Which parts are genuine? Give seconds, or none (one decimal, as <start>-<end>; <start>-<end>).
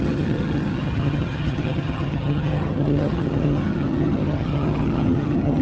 none